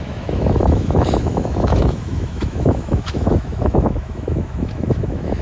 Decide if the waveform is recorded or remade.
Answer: remade